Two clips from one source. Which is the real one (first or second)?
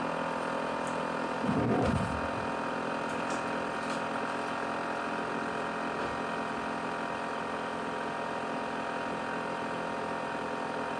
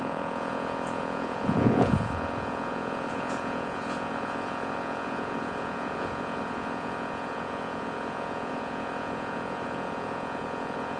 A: first